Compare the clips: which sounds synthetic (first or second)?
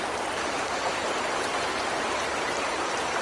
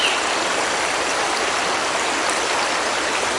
first